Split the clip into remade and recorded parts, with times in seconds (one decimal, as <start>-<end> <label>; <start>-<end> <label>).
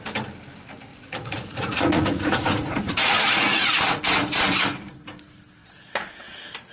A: 0.0-0.9 recorded; 0.9-4.0 remade; 4.0-6.7 recorded